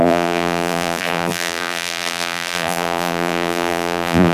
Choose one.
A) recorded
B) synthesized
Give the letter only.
B